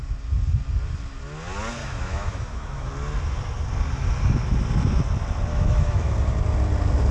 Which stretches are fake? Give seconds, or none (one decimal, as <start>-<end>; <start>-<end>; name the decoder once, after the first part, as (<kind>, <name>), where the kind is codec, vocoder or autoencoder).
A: 1.8-2.9 (autoencoder, DAC-VAE); 5.5-6.1